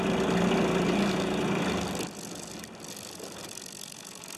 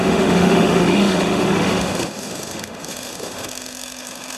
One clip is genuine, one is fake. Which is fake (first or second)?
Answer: second